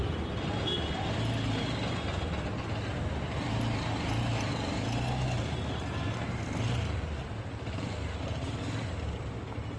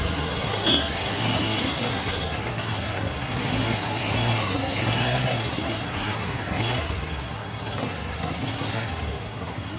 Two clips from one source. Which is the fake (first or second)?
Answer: second